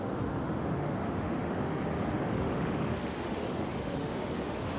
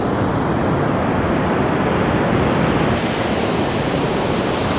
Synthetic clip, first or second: first